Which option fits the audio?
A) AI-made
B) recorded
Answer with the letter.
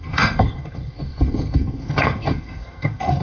A